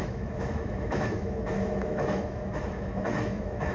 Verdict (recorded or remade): remade